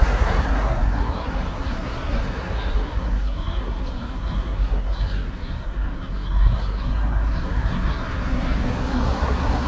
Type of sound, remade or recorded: remade